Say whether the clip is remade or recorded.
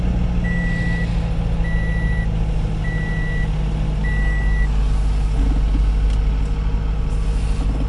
recorded